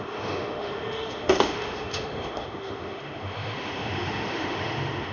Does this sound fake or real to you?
fake